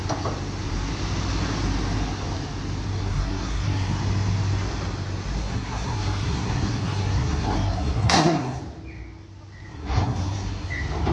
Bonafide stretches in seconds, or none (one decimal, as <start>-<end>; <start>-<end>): 0.0-3.0; 4.0-5.4; 8.6-9.7; 10.7-11.1

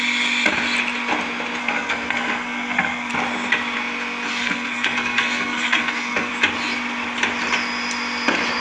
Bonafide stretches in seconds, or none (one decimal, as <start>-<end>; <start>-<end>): 0.0-1.6; 3.1-4.3; 6.3-8.6

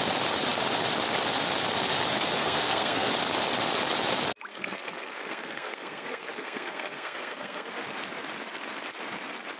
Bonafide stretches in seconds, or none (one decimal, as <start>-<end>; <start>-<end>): 0.0-2.4; 3.1-4.5; 7.7-9.6

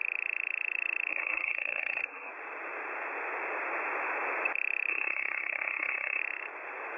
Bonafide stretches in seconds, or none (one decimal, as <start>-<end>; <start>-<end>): 0.0-1.1; 2.3-4.9; 6.2-7.0

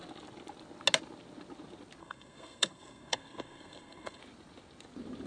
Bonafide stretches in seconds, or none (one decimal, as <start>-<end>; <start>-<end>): 0.0-2.0; 4.2-5.3

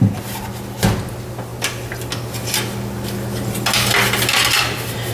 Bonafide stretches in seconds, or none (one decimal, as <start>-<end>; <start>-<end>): 0.0-5.1

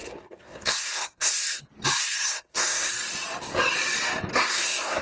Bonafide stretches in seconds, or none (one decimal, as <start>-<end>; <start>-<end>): 1.6-2.0; 2.9-4.3